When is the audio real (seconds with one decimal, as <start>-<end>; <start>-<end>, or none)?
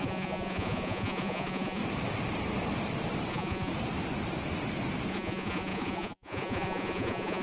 1.8-3.3; 3.7-5.1